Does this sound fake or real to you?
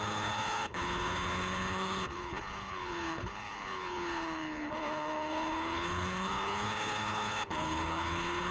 fake